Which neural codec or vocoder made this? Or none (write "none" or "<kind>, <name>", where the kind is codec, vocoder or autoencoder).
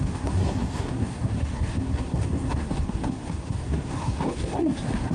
codec, SNAC